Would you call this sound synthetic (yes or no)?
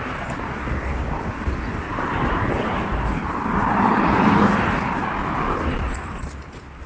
no